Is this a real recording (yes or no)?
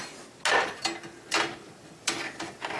yes